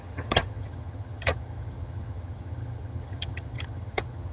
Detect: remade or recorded remade